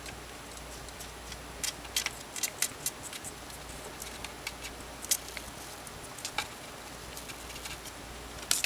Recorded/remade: recorded